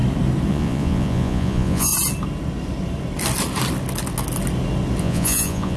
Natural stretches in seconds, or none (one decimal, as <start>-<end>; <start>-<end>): 0.0-0.5; 1.9-5.0